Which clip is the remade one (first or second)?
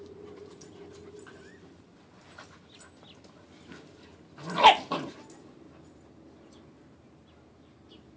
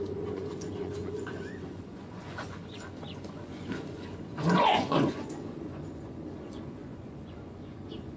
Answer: second